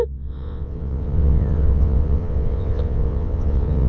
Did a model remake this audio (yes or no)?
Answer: yes